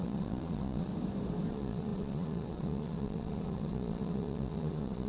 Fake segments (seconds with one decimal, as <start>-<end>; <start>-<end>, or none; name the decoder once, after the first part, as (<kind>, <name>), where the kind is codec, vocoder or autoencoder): 0.0-0.9 (vocoder, Vocos); 1.5-5.1

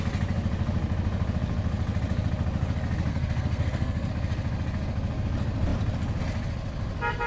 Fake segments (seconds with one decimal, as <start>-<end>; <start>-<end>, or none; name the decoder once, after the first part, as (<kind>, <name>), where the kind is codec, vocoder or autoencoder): 3.1-4.1 (codec, SNAC)

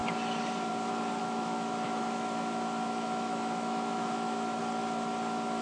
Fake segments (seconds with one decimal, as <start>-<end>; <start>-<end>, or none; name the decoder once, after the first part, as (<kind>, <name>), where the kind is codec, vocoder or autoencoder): 1.2-4.6 (autoencoder, DAC-VAE)

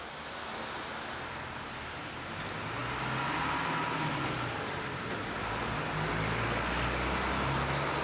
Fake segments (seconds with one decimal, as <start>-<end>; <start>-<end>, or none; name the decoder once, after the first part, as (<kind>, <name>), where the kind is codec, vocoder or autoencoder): none

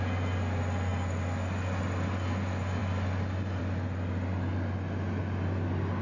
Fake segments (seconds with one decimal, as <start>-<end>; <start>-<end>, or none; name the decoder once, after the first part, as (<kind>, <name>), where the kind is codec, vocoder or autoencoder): none

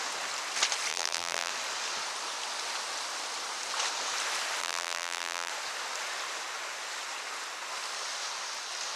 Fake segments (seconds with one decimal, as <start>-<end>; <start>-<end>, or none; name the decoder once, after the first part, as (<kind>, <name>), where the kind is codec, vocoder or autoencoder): 0.9-1.5 (vocoder, BigVGAN v2); 4.6-5.5

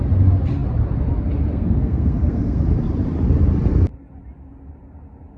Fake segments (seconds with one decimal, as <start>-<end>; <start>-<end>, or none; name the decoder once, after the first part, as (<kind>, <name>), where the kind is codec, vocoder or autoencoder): 1.5-2.6 (codec, SNAC)